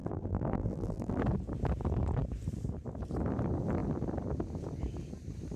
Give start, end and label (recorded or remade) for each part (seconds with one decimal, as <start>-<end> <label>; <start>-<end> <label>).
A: 0.0-1.2 remade; 1.2-5.6 recorded